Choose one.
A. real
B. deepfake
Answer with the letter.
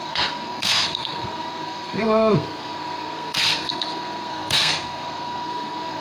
B